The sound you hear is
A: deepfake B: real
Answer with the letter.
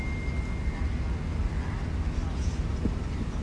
B